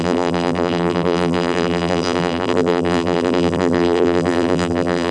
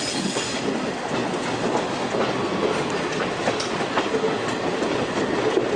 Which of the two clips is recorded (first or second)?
second